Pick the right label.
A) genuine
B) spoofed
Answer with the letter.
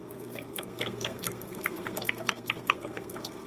B